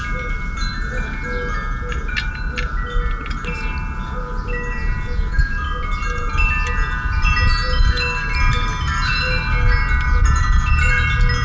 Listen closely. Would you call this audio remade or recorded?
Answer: recorded